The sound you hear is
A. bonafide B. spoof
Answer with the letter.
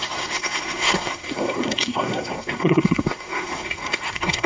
B